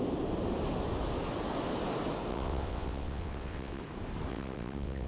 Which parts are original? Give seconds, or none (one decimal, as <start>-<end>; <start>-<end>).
0.0-2.3; 3.8-4.3